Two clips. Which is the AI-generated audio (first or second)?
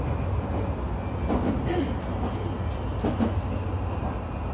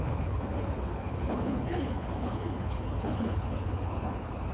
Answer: second